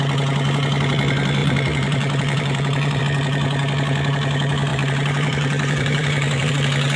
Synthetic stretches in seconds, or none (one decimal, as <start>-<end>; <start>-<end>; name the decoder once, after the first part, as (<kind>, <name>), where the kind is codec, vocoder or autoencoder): 1.4-3.0 (vocoder, BigVGAN v2); 4.7-6.5